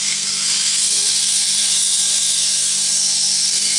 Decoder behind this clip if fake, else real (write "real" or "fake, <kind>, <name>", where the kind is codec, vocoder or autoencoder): fake, codec, SNAC